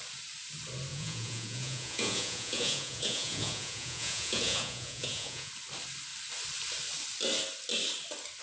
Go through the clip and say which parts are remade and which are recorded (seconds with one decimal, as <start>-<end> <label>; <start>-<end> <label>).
0.0-0.9 recorded; 0.9-5.5 remade; 5.5-8.4 recorded